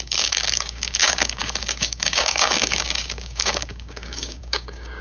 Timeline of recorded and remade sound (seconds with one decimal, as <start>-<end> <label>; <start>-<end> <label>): 0.0-5.0 remade